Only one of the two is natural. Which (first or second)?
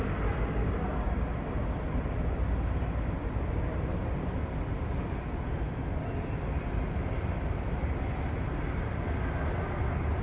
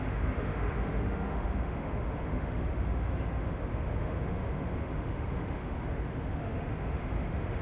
first